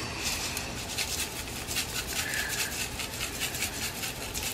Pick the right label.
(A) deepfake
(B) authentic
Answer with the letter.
B